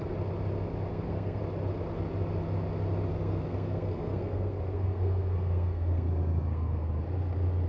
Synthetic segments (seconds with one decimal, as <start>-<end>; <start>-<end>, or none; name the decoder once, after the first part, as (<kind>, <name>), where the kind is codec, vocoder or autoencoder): 0.9-1.4 (codec, SNAC); 3.1-6.9